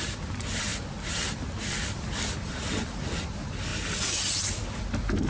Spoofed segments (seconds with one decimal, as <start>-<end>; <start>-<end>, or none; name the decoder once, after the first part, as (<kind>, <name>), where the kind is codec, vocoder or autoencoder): none